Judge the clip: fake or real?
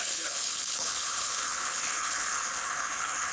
fake